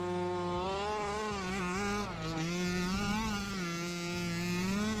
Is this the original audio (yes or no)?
yes